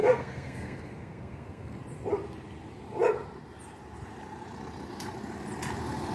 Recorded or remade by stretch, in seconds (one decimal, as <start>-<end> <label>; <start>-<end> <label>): 0.0-1.8 remade; 1.8-6.1 recorded